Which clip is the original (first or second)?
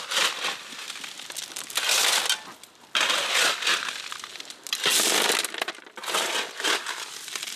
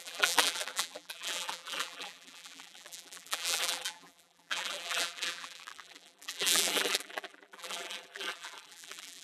first